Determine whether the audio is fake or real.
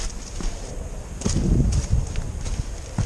real